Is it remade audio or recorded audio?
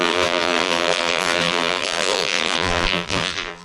remade